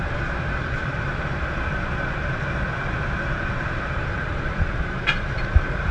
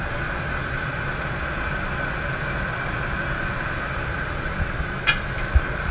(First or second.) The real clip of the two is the second